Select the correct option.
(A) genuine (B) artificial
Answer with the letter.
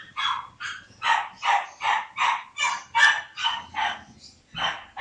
A